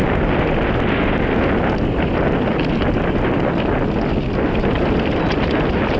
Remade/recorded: recorded